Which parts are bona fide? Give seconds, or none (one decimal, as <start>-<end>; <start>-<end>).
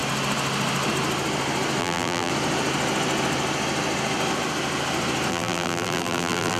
0.0-1.8; 2.3-5.3